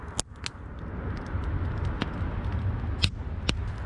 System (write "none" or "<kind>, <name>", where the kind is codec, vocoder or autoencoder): none